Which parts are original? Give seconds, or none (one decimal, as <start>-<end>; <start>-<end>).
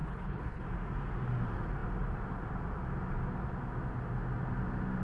0.6-5.0